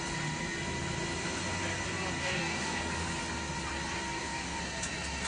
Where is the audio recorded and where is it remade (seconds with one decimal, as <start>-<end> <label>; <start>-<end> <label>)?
0.0-2.2 recorded; 2.2-2.8 remade; 2.8-4.1 recorded; 4.1-4.6 remade; 4.6-5.3 recorded